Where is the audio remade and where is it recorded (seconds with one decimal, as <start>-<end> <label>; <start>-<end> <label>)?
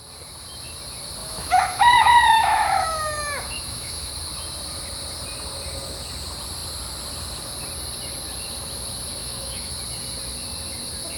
0.0-1.2 recorded; 1.2-4.1 remade; 4.1-9.2 recorded; 9.2-9.7 remade; 9.7-11.2 recorded